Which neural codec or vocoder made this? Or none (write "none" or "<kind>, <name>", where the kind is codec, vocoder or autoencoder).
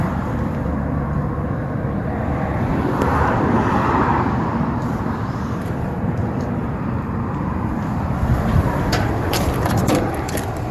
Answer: vocoder, BigVGAN v2